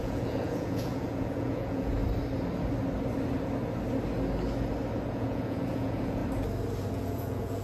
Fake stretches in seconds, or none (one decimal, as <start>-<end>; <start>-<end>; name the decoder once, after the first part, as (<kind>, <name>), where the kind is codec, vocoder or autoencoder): 0.0-2.0 (vocoder, Vocos); 5.1-6.2; 6.9-7.6